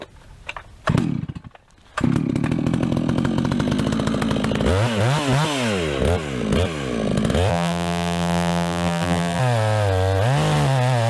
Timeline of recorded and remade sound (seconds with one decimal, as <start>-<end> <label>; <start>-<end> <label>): 0.0-7.5 recorded; 7.5-9.4 remade; 9.4-11.1 recorded